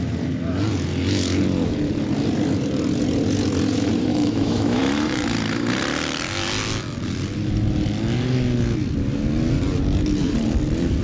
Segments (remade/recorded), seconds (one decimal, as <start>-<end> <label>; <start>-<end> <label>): 0.0-4.1 recorded; 4.1-4.8 remade; 4.8-11.0 recorded